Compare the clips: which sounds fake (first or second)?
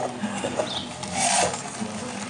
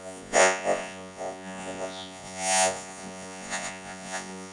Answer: second